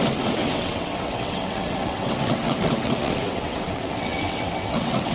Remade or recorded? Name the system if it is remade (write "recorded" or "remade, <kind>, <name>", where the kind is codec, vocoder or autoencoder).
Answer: remade, vocoder, WaveNeXt